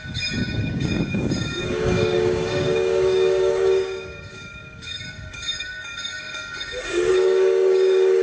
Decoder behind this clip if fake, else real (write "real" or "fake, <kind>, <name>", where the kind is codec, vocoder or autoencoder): fake, codec, DAC